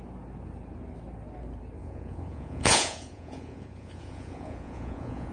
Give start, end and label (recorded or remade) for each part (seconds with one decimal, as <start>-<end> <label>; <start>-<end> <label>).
0.0-1.8 recorded; 1.8-5.3 remade

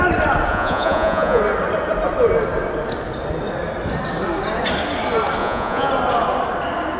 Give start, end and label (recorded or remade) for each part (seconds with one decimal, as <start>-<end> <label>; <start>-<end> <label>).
0.0-0.5 recorded; 0.5-1.4 remade; 1.4-5.4 recorded; 5.4-5.9 remade; 5.9-7.0 recorded

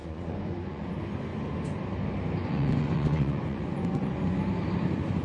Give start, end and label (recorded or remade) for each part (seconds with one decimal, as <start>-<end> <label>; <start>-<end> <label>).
0.0-0.9 remade; 0.9-2.4 recorded; 2.4-4.2 remade; 4.2-5.2 recorded

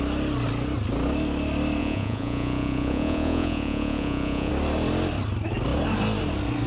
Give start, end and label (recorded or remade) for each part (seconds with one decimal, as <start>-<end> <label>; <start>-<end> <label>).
0.0-1.8 recorded; 1.8-4.5 remade; 4.5-6.7 recorded

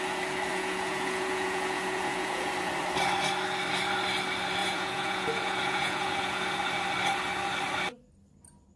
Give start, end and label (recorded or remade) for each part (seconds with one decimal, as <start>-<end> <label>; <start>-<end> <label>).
0.0-0.5 recorded; 0.5-2.5 remade; 2.5-4.6 recorded; 4.6-6.6 remade; 6.6-8.8 recorded

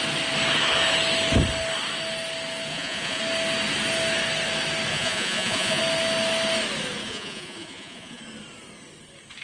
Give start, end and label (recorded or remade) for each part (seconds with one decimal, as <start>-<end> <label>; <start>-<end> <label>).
0.0-2.7 recorded; 2.7-3.2 remade; 3.2-4.9 recorded; 4.9-5.8 remade; 5.8-7.0 recorded; 7.0-8.2 remade; 8.2-9.4 recorded

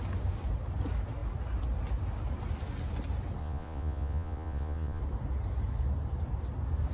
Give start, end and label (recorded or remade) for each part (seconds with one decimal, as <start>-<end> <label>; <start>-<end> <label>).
0.0-3.4 recorded; 3.4-5.0 remade; 5.0-6.9 recorded

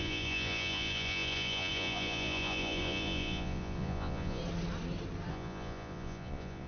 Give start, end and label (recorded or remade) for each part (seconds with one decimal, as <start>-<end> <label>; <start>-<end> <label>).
0.0-4.4 remade; 4.4-5.3 recorded; 5.3-6.7 remade